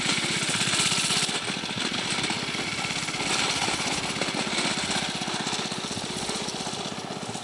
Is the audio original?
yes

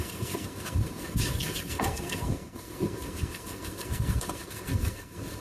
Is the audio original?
no